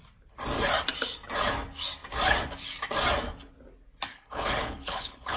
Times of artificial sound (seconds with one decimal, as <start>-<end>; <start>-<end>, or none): 4.1-5.4